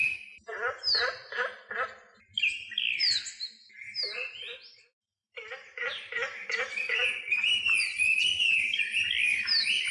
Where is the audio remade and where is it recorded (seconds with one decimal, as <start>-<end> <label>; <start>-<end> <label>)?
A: 0.0-3.7 recorded; 3.7-4.4 remade; 4.4-5.2 recorded; 5.2-8.8 remade; 8.8-9.9 recorded